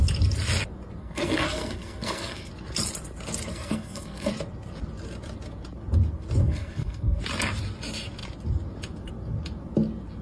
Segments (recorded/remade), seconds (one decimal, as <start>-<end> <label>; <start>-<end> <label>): 0.0-1.0 recorded; 1.0-2.5 remade; 2.5-3.5 recorded; 3.5-4.3 remade; 4.3-6.4 recorded; 6.4-7.2 remade; 7.2-10.2 recorded